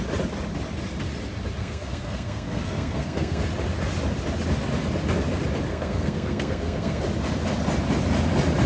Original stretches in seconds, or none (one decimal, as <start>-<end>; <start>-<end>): 0.0-1.6; 3.4-5.7; 7.0-8.7